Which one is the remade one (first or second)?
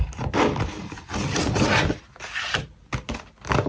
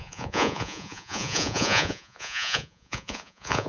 second